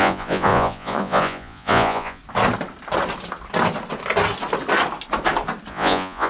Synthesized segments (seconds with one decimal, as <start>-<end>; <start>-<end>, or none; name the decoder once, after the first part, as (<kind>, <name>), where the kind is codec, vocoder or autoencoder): 0.0-2.2 (vocoder, Vocos); 5.7-6.3